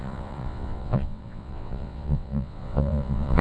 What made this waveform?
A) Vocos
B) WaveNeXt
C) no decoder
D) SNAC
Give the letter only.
B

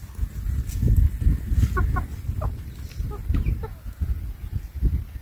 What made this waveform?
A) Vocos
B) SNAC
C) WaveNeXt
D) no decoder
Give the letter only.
D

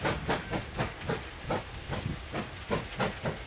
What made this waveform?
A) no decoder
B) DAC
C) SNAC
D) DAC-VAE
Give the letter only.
A